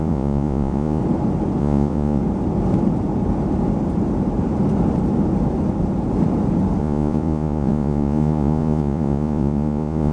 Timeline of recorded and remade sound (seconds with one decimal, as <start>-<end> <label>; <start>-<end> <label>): 0.0-1.0 remade; 1.0-1.6 recorded; 1.6-2.2 remade; 2.2-6.8 recorded; 6.8-10.1 remade